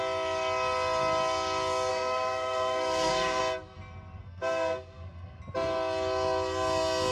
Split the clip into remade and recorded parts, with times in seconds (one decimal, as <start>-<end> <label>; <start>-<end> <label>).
0.0-1.9 recorded; 1.9-3.4 remade; 3.4-4.2 recorded; 4.2-5.4 remade; 5.4-7.1 recorded